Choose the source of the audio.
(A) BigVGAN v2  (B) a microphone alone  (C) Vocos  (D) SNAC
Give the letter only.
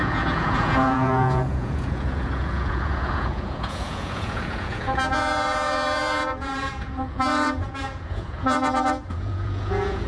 C